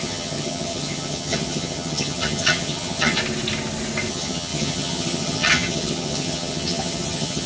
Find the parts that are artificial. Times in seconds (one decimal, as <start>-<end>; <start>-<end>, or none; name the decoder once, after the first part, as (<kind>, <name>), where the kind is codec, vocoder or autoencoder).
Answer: 0.0-3.2 (vocoder, HiFi-GAN); 4.1-7.5